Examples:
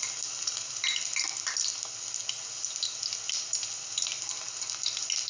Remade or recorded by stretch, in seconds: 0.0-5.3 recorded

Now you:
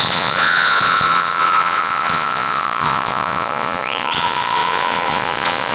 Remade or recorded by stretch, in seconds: 0.0-5.7 remade

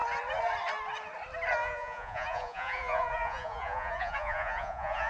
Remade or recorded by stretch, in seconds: 0.0-1.6 recorded; 1.6-5.1 remade

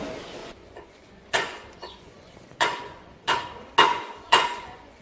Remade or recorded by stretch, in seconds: 0.0-0.4 recorded; 0.4-3.4 remade; 3.4-3.8 recorded; 3.8-5.0 remade

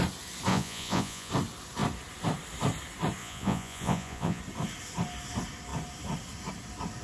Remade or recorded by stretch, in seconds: 0.0-0.5 recorded; 0.5-1.3 remade; 1.3-3.2 recorded; 3.2-4.4 remade; 4.4-7.0 recorded

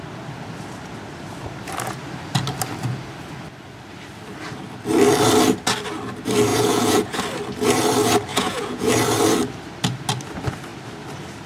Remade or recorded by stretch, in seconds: 0.0-6.5 recorded; 6.5-7.2 remade; 7.2-8.3 recorded; 8.3-8.9 remade; 8.9-11.5 recorded